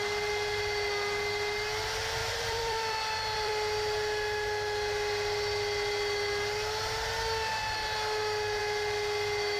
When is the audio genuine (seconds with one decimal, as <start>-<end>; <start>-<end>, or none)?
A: 0.0-2.2; 3.5-9.6